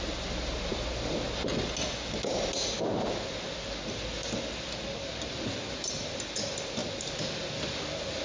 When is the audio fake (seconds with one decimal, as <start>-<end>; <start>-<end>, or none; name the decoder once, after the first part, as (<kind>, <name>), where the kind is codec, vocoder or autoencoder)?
none